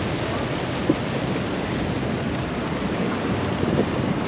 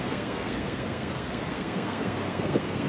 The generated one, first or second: second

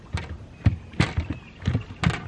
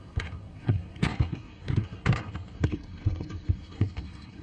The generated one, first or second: second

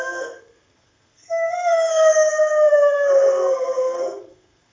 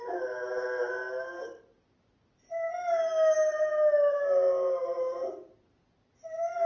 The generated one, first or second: first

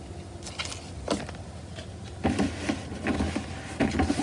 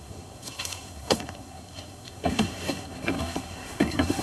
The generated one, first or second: second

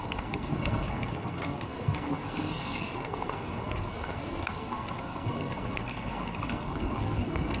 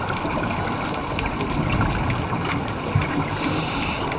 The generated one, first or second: first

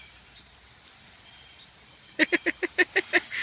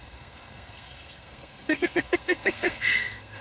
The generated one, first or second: second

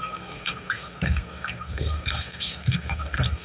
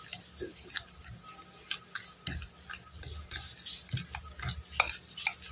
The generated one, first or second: first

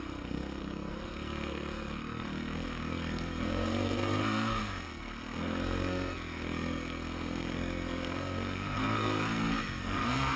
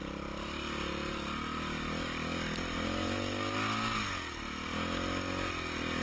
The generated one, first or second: first